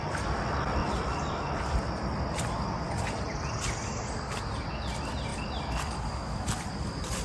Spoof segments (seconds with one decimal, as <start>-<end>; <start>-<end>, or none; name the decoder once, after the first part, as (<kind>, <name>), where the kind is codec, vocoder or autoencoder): none